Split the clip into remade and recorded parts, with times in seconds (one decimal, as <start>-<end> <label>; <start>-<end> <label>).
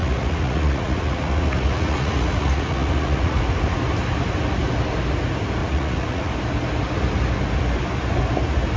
0.0-3.4 remade; 3.4-5.6 recorded; 5.6-6.3 remade; 6.3-8.8 recorded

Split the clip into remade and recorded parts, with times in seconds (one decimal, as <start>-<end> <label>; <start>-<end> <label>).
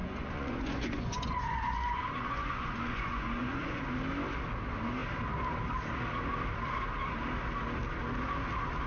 0.0-3.8 remade; 3.8-8.9 recorded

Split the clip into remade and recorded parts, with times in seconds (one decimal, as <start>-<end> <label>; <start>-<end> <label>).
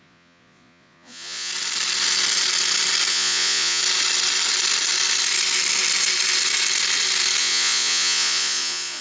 0.0-1.5 remade; 1.5-3.1 recorded; 3.1-3.8 remade; 3.8-7.4 recorded; 7.4-9.0 remade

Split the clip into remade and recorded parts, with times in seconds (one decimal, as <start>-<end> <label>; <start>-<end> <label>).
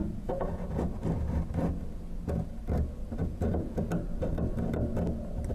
0.0-1.0 remade; 1.0-3.2 recorded; 3.2-3.9 remade; 3.9-5.5 recorded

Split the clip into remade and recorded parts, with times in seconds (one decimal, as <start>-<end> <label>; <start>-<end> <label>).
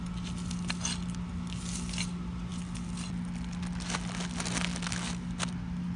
0.0-6.0 recorded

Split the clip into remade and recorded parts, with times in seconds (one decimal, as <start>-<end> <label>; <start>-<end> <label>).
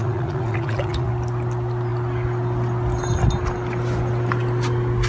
0.0-1.1 remade; 1.1-5.1 recorded